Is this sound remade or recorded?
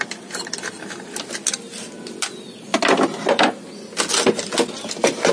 recorded